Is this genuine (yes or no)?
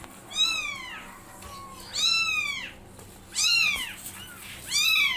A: yes